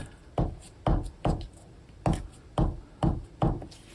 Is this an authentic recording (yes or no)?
yes